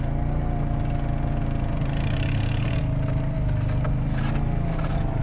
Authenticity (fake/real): real